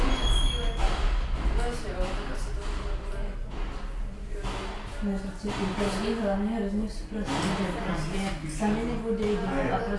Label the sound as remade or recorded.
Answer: recorded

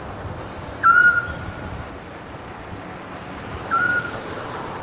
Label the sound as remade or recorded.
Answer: recorded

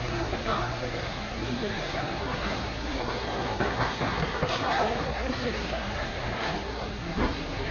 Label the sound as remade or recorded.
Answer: remade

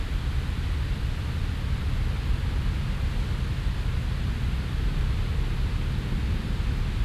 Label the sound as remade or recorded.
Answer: recorded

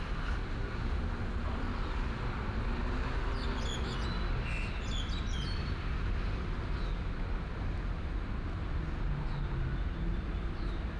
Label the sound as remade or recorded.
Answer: recorded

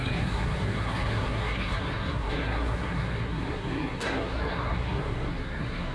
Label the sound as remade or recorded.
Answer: remade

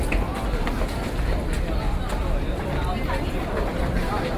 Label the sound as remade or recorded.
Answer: recorded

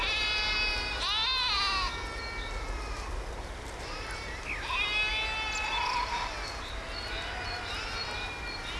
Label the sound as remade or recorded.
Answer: recorded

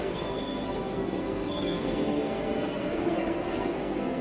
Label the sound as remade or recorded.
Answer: remade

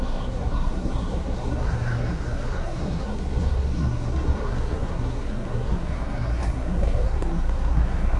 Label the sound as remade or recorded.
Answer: remade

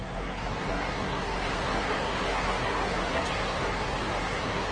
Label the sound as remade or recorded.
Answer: remade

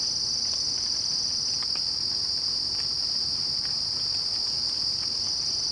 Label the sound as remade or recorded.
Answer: recorded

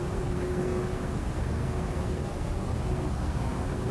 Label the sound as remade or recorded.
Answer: remade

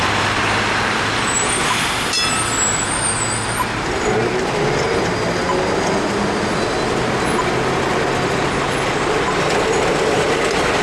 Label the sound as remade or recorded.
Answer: recorded